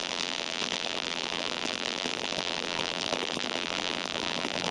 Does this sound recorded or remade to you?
remade